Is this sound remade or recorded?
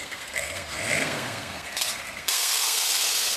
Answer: remade